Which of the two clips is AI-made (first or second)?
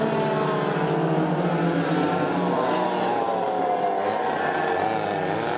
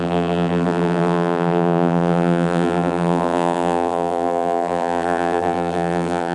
second